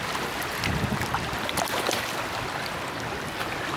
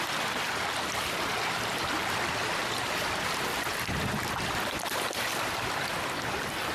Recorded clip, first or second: first